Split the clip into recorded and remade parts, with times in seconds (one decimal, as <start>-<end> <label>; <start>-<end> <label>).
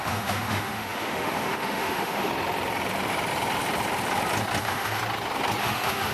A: 0.0-2.3 remade; 2.3-4.6 recorded; 4.6-5.0 remade; 5.0-5.6 recorded; 5.6-6.1 remade